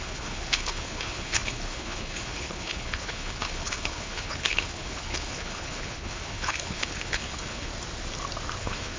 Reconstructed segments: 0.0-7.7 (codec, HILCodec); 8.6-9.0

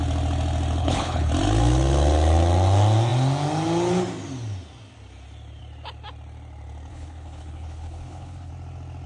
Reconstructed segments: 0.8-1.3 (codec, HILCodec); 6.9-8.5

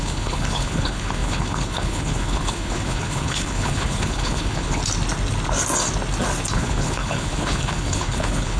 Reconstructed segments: 0.0-4.8 (codec, HILCodec); 6.5-8.6

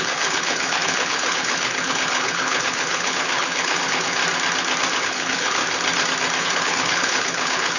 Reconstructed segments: 0.0-4.2 (codec, HILCodec); 5.0-5.6; 6.4-7.8

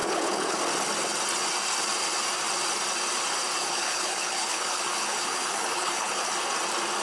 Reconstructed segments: 0.0-0.6 (codec, HILCodec); 3.6-6.3

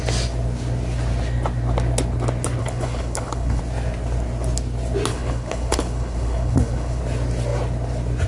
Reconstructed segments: 2.6-3.6 (codec, HILCodec); 5.1-7.0

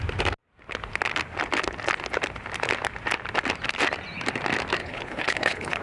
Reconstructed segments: 4.8-5.8 (codec, HILCodec)